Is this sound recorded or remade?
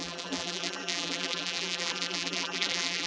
remade